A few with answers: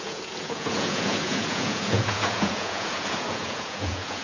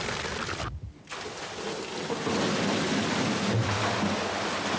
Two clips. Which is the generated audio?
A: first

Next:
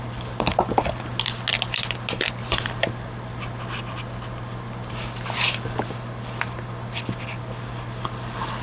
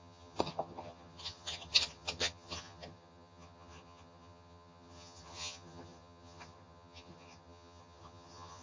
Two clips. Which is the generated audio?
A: second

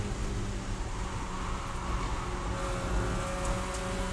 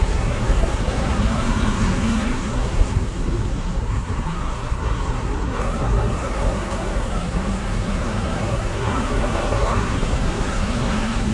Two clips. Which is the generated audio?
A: second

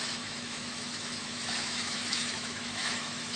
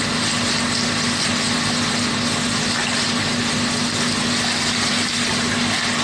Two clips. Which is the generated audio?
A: first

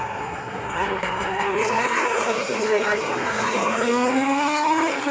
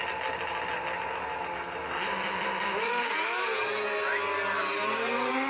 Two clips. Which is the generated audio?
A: first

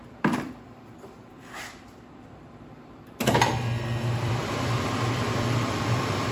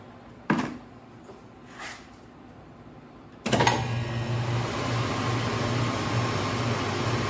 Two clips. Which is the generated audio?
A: first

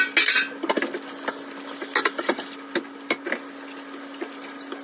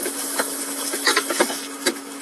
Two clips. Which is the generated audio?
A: second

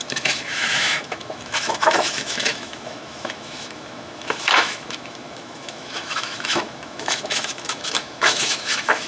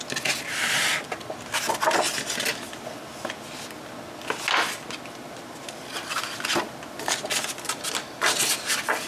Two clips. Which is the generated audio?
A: first